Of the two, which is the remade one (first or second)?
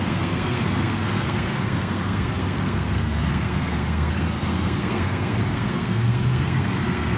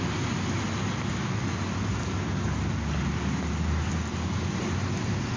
first